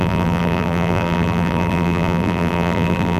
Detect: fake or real fake